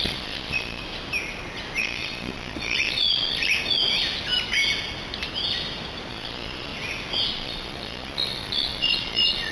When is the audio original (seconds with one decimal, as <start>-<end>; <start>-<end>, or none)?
0.8-1.8; 3.5-6.1; 6.7-7.3